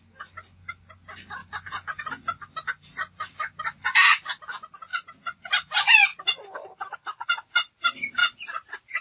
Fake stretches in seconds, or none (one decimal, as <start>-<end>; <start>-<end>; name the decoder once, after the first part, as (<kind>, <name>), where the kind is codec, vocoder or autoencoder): 8.2-9.0 (vocoder, Vocos)